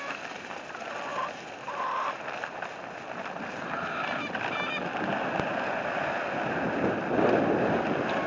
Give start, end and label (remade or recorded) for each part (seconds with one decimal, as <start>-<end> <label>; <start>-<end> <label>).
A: 0.0-8.3 recorded